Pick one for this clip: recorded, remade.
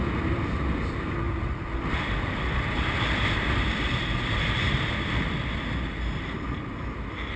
recorded